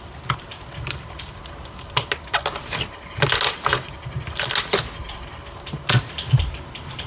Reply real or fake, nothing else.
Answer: real